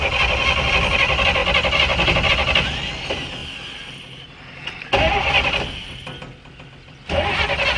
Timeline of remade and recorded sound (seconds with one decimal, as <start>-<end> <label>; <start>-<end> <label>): 0.0-7.8 recorded